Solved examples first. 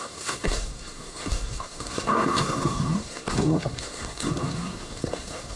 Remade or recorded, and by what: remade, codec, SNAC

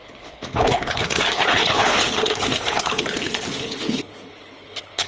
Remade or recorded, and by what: remade, codec, HILCodec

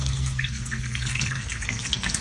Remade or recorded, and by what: remade, codec, SNAC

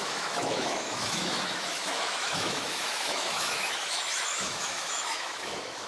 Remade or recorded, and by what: remade, autoencoder, DAC-VAE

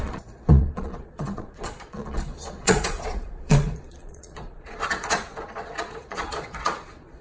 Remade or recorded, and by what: remade, vocoder, Vocos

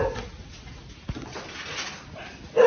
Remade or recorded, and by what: recorded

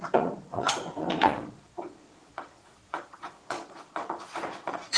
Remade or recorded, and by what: remade, vocoder, Vocos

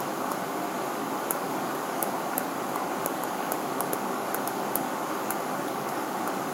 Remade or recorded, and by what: remade, codec, DAC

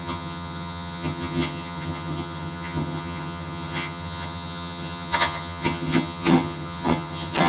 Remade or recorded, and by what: remade, vocoder, HiFi-GAN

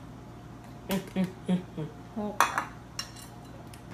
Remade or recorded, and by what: recorded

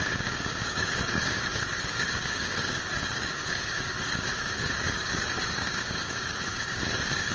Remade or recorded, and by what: remade, codec, DAC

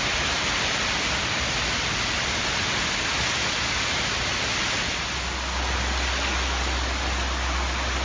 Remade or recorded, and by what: recorded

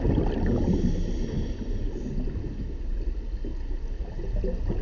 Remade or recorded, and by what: recorded